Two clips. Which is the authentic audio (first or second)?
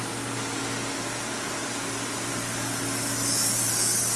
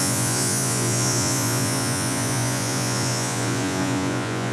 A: first